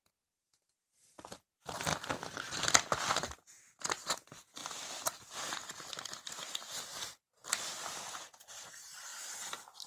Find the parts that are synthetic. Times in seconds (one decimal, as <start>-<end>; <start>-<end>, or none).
1.9-2.6